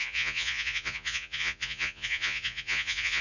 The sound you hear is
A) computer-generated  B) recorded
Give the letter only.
A